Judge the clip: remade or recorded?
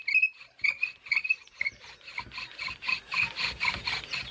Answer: recorded